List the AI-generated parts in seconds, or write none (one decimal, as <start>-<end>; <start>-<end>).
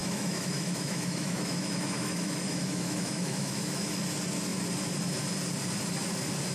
0.0-3.9